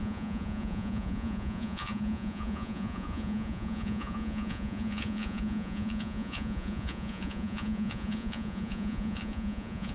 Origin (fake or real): fake